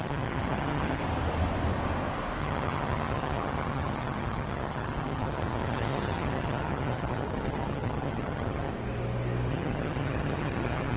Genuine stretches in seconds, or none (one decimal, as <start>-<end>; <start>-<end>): 1.0-2.4; 8.7-9.5